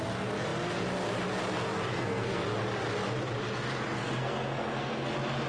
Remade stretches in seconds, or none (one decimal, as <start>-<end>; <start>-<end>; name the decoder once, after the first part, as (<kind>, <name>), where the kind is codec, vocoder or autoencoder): 1.9-2.4 (codec, SNAC); 4.0-5.1